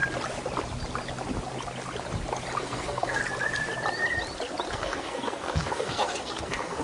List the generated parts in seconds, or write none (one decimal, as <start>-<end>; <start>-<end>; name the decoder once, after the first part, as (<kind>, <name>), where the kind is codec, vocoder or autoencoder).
2.6-3.2 (codec, SNAC); 4.7-6.8